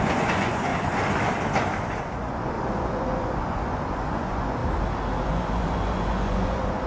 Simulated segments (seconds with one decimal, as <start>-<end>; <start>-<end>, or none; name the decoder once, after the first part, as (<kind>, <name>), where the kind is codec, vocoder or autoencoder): 0.0-0.7 (vocoder, Vocos); 2.0-4.6; 5.2-6.9